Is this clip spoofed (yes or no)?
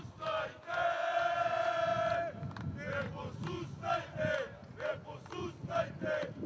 no